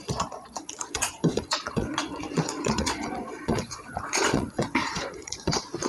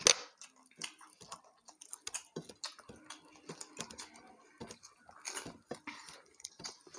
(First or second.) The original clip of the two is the second